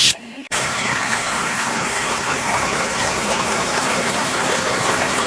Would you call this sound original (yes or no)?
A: no